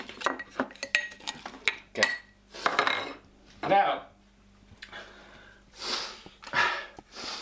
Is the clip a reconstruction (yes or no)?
no